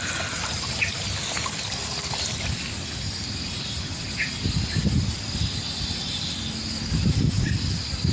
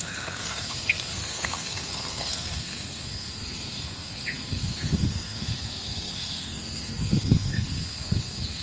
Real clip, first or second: first